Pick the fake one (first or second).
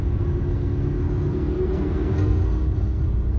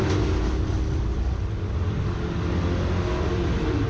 first